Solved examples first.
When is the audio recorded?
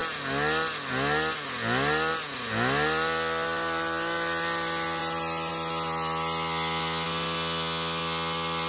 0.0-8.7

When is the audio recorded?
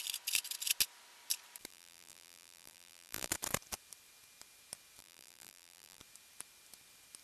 0.0-1.7; 3.3-5.0; 6.0-7.2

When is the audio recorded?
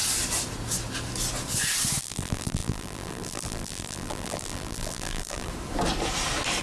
0.0-2.0; 5.5-6.6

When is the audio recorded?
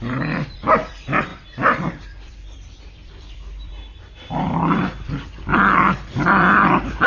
none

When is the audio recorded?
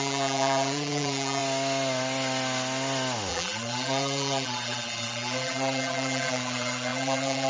1.4-3.3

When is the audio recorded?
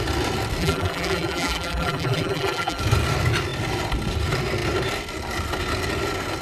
0.0-0.6; 2.8-6.4